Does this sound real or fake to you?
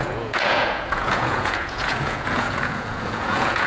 fake